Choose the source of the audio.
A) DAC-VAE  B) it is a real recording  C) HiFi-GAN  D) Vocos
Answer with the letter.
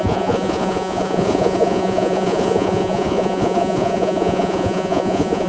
D